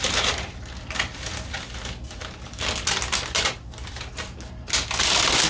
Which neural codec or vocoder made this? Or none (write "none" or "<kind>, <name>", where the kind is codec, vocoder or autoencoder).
none